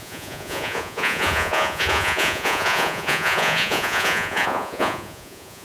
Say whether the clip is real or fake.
fake